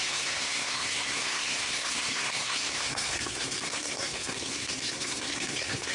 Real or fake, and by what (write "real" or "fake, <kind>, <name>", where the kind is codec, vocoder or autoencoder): fake, codec, SNAC